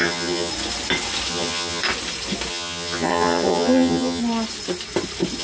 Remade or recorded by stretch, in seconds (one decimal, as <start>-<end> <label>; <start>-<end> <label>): 0.0-0.5 remade; 0.5-1.3 recorded; 1.3-1.8 remade; 1.8-2.5 recorded; 2.5-4.2 remade; 4.2-5.4 recorded